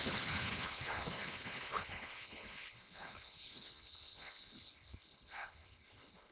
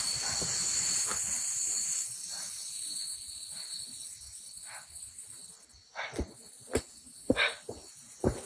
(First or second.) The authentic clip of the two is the second